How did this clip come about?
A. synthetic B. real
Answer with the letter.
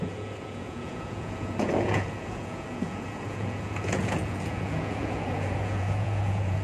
A